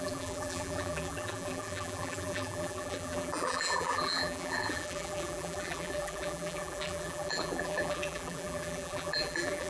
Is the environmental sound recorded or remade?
remade